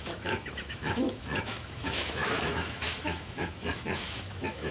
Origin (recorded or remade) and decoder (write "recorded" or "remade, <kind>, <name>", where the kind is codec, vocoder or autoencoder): remade, autoencoder, DAC-VAE